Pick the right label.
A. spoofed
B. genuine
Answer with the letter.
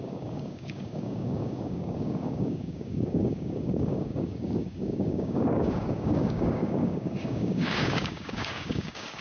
A